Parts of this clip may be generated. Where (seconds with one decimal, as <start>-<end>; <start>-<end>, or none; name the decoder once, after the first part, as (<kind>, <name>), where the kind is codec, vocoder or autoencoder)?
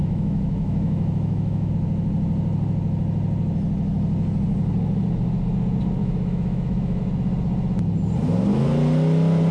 0.0-1.7 (autoencoder, DAC-VAE); 6.0-7.0